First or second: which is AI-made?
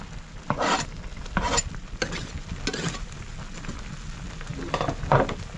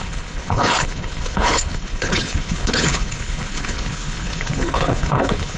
second